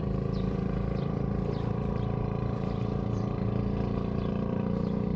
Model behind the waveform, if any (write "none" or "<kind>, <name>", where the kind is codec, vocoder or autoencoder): vocoder, BigVGAN v2